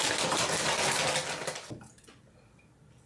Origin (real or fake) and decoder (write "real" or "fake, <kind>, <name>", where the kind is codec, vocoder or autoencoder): real